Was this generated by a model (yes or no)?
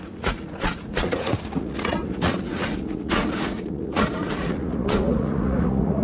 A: yes